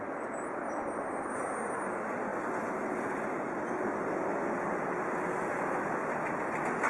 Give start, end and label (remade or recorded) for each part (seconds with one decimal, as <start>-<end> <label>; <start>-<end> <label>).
0.0-6.9 recorded